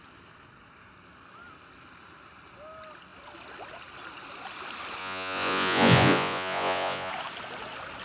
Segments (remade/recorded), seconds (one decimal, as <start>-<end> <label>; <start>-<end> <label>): 0.0-5.0 recorded; 5.0-7.1 remade; 7.1-8.0 recorded